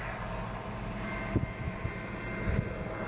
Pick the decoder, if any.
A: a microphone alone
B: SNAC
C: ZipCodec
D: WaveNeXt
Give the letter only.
A